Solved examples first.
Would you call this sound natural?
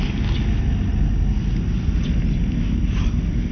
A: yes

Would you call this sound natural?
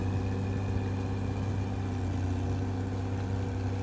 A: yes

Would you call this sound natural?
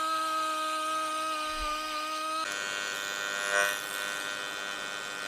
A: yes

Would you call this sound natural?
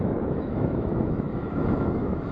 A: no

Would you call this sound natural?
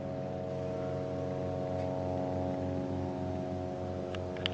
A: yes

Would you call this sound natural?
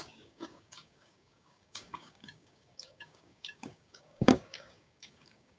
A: no